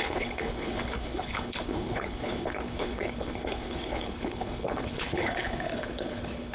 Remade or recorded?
remade